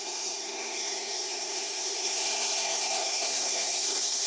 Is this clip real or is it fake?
fake